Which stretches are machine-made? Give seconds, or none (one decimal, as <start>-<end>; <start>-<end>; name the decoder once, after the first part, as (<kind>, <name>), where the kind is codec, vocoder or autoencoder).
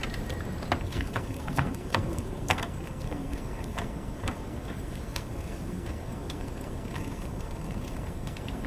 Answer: 0.8-8.7 (codec, SNAC)